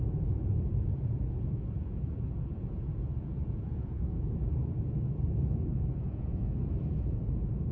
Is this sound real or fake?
fake